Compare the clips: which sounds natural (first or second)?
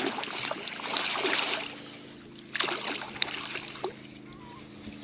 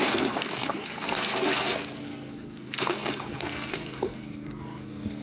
first